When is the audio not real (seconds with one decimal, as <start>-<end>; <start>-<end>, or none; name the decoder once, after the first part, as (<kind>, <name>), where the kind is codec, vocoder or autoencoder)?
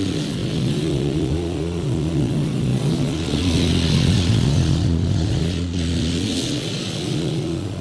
0.0-7.8 (vocoder, Vocos)